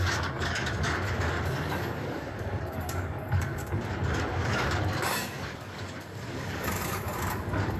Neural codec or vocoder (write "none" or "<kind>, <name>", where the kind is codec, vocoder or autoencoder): codec, DAC